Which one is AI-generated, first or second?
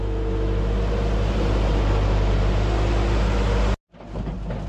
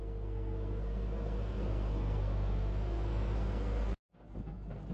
second